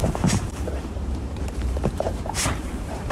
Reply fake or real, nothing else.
fake